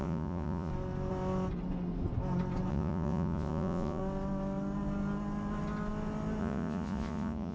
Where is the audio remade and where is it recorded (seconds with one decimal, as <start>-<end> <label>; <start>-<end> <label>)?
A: 0.0-0.7 remade; 0.7-2.7 recorded; 2.7-4.0 remade; 4.0-6.4 recorded; 6.4-7.5 remade